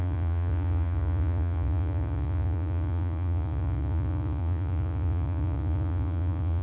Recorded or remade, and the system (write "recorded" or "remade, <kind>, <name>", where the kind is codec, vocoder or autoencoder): remade, vocoder, Vocos